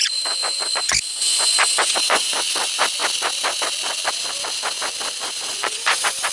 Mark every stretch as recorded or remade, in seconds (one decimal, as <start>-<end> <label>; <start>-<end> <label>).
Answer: 0.0-2.4 remade; 2.4-5.5 recorded; 5.5-6.3 remade